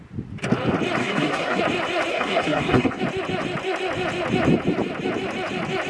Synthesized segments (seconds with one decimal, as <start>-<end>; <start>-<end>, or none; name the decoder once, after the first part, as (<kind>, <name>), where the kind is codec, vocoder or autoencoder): 1.0-1.6 (codec, SNAC); 2.1-3.0